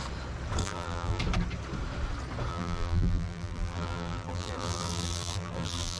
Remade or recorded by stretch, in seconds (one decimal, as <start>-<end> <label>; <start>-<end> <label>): 0.0-0.6 recorded; 0.6-1.2 remade; 1.2-2.5 recorded; 2.5-6.0 remade